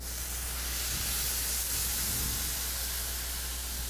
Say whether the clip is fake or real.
real